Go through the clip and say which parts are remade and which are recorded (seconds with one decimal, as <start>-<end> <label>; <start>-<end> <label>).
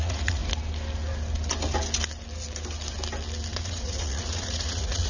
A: 0.0-0.4 remade; 0.4-3.5 recorded; 3.5-5.1 remade